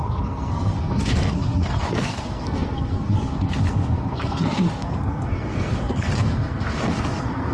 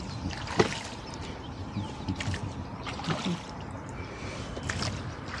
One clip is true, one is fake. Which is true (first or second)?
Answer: second